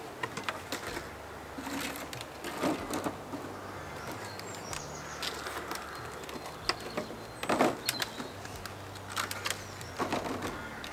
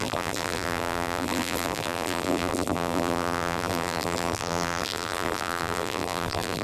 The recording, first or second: first